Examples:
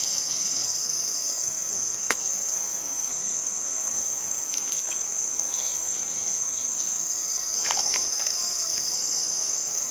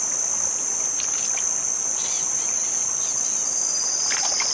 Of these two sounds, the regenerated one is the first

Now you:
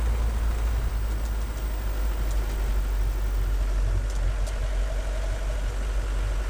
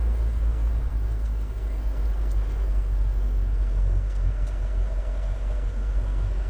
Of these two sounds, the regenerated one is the second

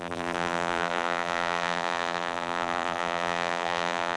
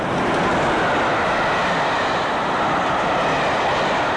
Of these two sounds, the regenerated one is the first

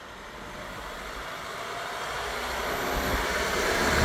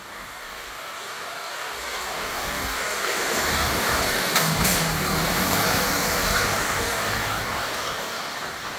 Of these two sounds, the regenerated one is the second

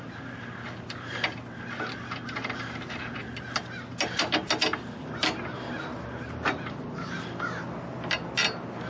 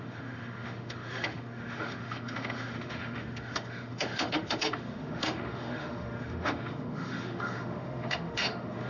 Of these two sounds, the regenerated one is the second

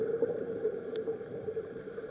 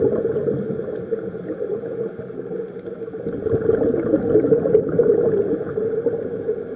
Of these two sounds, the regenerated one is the first